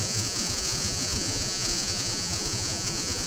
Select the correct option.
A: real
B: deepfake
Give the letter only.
B